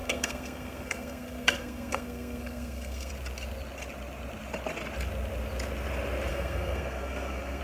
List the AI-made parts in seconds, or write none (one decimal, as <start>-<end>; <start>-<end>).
0.0-3.1; 6.3-7.6